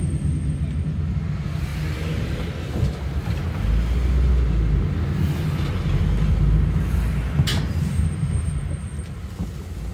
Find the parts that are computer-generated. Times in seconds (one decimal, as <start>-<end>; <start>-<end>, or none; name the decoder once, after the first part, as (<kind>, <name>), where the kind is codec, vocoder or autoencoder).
5.7-6.3 (vocoder, BigVGAN v2); 7.5-8.5